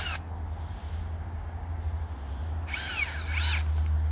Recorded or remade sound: recorded